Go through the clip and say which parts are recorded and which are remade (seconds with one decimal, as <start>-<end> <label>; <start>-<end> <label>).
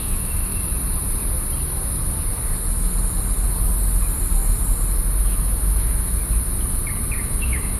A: 0.0-0.5 remade; 0.5-5.2 recorded; 5.2-6.2 remade; 6.2-7.2 recorded; 7.2-7.8 remade